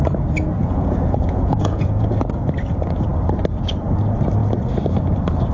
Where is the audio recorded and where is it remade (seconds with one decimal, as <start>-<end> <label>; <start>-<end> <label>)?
0.0-0.6 recorded; 0.6-2.1 remade; 2.1-5.5 recorded